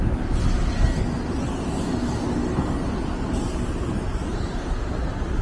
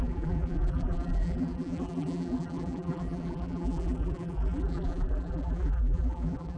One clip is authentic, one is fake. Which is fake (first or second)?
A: second